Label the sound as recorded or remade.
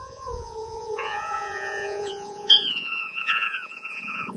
remade